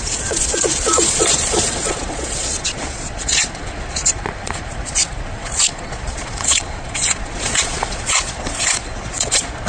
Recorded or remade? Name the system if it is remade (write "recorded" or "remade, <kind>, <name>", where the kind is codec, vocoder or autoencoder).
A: remade, vocoder, Vocos